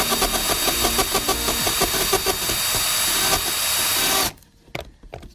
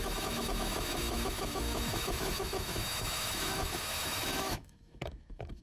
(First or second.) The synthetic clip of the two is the second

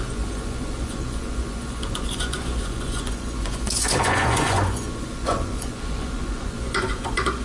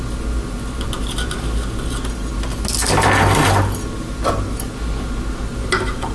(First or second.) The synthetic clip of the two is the first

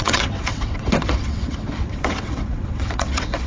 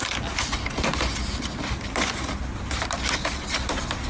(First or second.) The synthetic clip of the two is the first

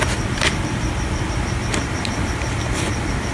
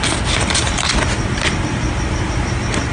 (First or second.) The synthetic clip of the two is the first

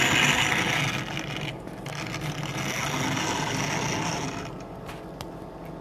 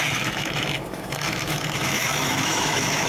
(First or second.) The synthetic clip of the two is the second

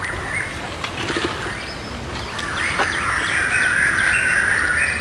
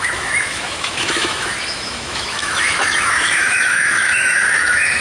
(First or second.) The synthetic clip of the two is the second